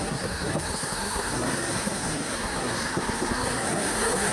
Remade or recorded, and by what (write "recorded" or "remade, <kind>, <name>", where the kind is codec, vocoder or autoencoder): remade, codec, SNAC